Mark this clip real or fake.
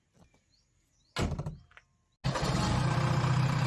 real